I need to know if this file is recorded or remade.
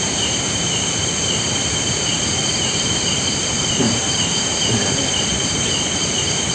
remade